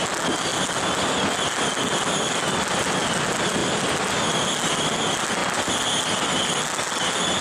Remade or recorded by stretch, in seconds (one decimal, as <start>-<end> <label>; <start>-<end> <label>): 0.0-7.4 recorded